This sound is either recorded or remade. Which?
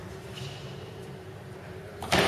remade